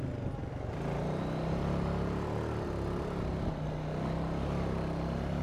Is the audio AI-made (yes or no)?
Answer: no